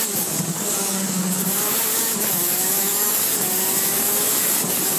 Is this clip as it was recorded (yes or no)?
no